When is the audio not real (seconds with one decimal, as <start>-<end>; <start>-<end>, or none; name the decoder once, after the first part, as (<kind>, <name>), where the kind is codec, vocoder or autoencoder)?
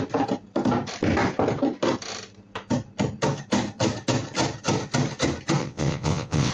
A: 5.6-6.5 (vocoder, WaveNeXt)